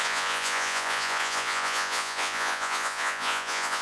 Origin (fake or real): fake